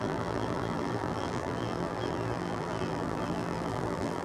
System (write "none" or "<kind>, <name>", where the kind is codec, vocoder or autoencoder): vocoder, BigVGAN v2